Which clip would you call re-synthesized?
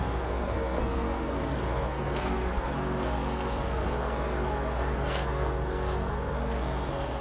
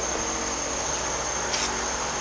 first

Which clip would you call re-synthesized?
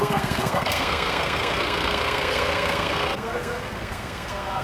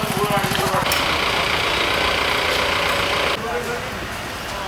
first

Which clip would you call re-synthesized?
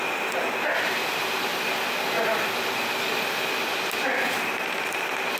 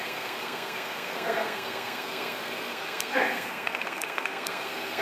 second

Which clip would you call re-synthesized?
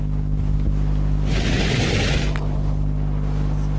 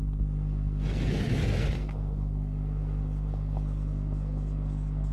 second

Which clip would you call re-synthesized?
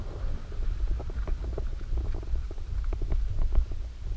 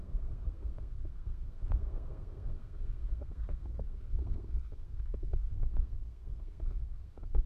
second